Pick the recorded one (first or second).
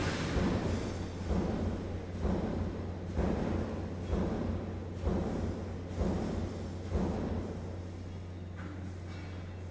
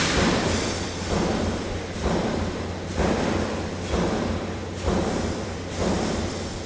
first